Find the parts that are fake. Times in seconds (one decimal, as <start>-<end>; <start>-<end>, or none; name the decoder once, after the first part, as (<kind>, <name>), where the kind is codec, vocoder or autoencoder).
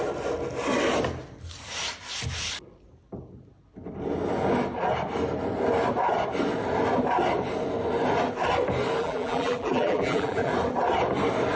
9.0-10.5 (vocoder, BigVGAN v2)